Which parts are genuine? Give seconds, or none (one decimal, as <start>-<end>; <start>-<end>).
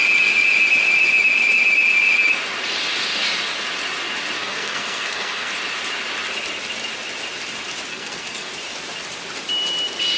0.0-4.4; 5.5-7.9; 8.5-10.2